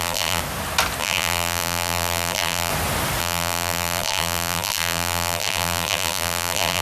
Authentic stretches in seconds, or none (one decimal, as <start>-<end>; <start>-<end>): 0.4-1.0; 2.7-3.2